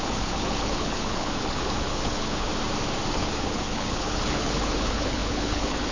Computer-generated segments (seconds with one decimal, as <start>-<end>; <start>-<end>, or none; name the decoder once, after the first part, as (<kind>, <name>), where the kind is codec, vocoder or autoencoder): 0.0-2.5 (codec, HILCodec); 3.1-5.9